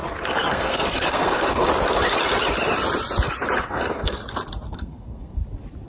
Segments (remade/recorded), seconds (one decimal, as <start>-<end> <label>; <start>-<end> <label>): 0.0-0.5 recorded; 0.5-1.7 remade; 1.7-3.6 recorded; 3.6-4.2 remade; 4.2-4.7 recorded; 4.7-5.3 remade; 5.3-5.9 recorded